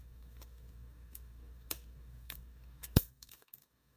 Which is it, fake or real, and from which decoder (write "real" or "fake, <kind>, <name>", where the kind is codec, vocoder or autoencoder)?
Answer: fake, codec, DAC